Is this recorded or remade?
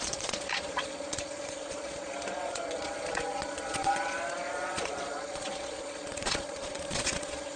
remade